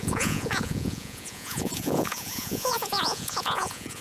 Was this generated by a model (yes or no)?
yes